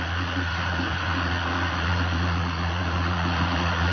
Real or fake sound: fake